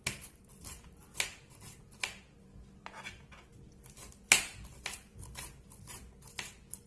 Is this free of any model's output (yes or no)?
yes